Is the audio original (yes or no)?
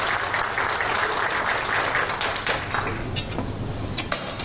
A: yes